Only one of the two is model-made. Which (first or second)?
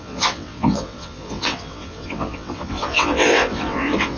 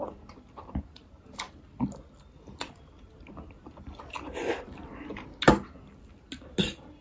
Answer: first